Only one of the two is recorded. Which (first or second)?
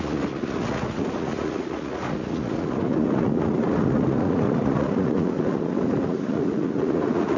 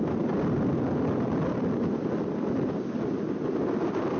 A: second